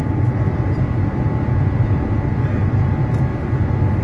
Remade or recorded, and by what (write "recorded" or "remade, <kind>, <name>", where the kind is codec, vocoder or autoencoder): recorded